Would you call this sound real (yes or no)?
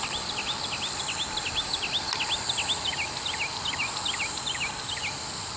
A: yes